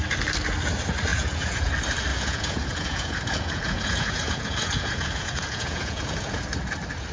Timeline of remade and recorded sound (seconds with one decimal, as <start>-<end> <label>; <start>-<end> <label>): 0.0-1.1 recorded; 1.1-1.7 remade; 1.7-2.1 recorded; 2.1-6.4 remade; 6.4-7.1 recorded